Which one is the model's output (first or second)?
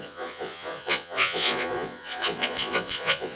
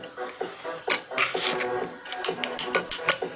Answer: first